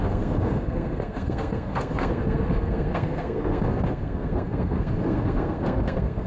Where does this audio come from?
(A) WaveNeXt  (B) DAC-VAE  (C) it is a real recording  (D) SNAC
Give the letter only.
D